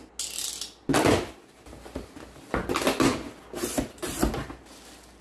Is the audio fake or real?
real